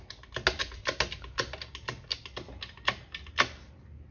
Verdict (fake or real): real